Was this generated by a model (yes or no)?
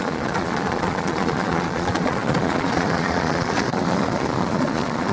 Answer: yes